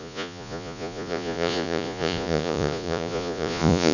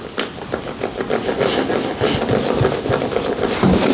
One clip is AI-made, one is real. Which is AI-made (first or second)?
first